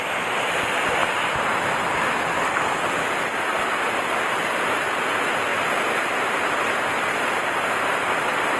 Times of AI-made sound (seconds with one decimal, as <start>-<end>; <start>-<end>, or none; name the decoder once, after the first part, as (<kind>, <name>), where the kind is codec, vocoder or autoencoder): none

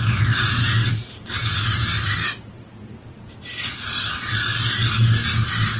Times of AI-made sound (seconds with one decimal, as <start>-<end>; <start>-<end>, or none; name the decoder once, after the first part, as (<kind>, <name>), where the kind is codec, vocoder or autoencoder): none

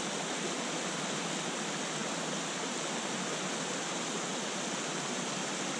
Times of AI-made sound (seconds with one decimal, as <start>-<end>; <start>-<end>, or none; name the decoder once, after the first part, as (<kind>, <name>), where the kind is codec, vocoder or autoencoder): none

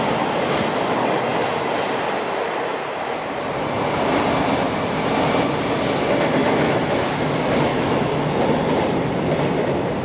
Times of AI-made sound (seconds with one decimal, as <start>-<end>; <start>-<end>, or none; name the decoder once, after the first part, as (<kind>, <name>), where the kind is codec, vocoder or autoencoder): 6.4-7.1 (autoencoder, DAC-VAE); 7.7-8.3

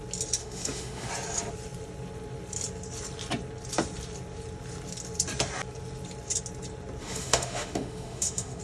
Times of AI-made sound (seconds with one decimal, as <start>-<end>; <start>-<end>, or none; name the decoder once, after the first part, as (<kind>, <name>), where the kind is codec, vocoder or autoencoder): 0.4-1.1 (autoencoder, DAC-VAE); 7.0-8.6